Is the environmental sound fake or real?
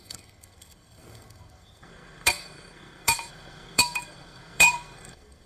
fake